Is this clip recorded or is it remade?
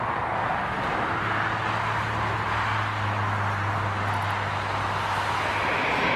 recorded